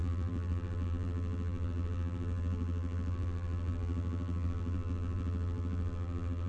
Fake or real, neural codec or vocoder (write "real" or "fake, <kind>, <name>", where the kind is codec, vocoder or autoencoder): fake, vocoder, BigVGAN v2